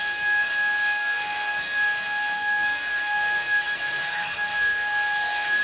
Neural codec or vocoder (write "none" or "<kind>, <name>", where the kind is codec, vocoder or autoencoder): codec, SNAC